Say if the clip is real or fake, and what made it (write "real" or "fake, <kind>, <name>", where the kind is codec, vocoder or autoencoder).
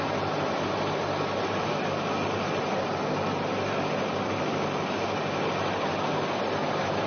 real